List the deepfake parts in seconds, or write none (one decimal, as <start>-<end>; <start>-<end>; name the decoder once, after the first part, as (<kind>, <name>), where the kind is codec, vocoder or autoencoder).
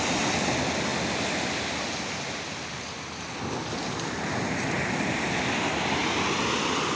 none